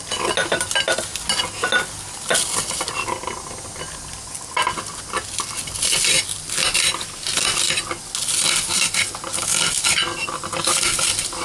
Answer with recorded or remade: recorded